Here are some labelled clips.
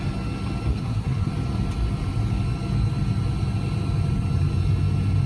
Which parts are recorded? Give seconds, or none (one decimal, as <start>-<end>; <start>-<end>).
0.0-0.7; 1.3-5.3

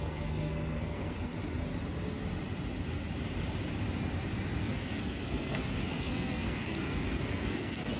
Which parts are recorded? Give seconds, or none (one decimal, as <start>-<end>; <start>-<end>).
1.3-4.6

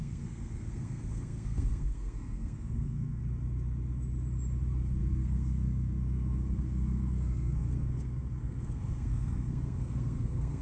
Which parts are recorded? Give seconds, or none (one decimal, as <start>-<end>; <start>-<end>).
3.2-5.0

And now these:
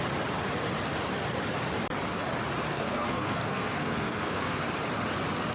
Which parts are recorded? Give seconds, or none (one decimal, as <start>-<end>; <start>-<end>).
0.0-2.7; 4.6-5.5

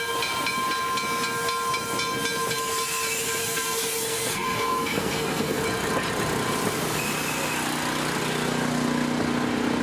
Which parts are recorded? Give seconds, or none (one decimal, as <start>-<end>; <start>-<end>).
0.0-3.4; 5.6-9.8